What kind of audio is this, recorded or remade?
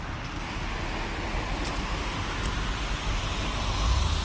recorded